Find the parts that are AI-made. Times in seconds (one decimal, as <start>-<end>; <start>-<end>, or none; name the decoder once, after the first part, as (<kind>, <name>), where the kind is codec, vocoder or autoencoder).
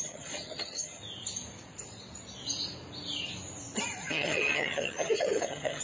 0.0-1.0 (vocoder, HiFi-GAN); 4.1-5.8